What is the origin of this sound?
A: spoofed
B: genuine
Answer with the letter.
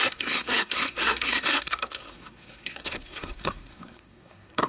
A